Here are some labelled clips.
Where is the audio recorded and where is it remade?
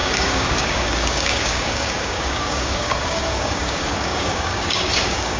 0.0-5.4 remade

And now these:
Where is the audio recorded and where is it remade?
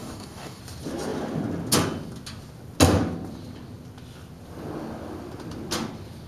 0.0-0.6 remade; 0.6-6.3 recorded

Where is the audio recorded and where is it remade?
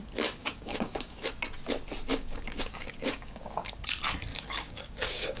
0.0-0.4 recorded; 0.4-1.3 remade; 1.3-2.1 recorded; 2.1-3.7 remade; 3.7-4.3 recorded; 4.3-5.4 remade